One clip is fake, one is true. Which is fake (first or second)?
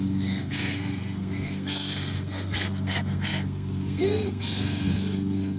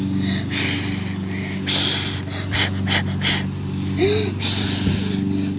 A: first